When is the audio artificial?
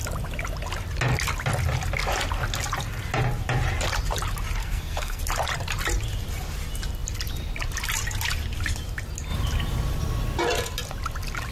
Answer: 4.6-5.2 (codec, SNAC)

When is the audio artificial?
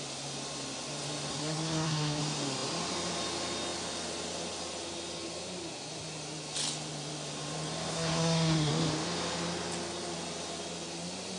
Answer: 1.3-2.2 (codec, SNAC); 7.9-8.7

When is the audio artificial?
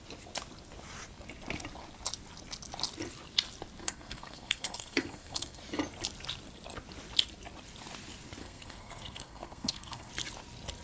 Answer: 3.8-5.6 (codec, SNAC); 8.4-10.1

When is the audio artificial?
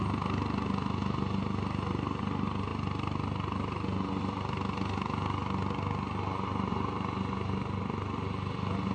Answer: none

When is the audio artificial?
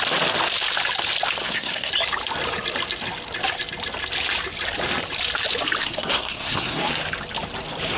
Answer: 1.4-1.9 (codec, SNAC); 5.8-6.9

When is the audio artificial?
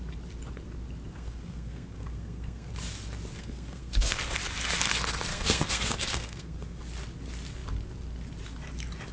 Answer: 1.1-2.7 (codec, SNAC); 3.3-4.2; 5.3-6.8